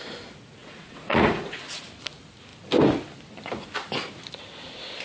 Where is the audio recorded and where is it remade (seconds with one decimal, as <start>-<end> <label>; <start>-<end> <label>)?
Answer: 0.0-0.6 recorded; 0.6-1.6 remade; 1.6-5.0 recorded